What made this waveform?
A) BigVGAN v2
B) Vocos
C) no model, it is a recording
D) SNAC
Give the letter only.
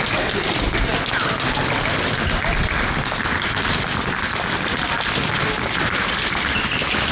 C